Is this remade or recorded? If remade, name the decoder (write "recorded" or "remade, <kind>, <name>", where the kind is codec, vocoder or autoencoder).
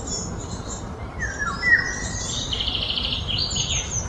recorded